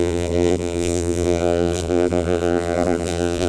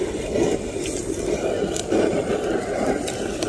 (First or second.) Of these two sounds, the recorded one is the second